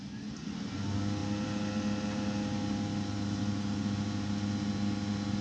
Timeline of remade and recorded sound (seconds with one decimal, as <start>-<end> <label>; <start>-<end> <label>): 0.0-5.4 recorded